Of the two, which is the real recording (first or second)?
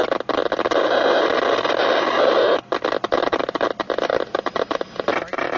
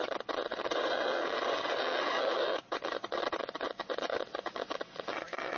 first